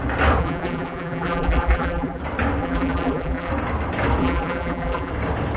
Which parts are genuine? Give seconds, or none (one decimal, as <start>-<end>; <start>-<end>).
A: 0.0-0.4; 2.2-2.6; 3.5-4.2; 5.1-5.6